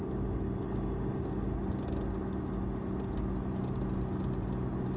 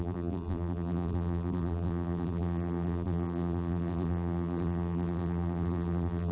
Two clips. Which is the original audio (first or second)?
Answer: first